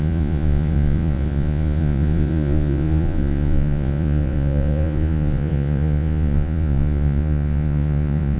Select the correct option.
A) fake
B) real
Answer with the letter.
A